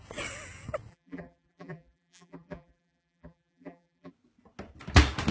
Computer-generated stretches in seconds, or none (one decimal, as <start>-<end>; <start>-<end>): 0.9-4.1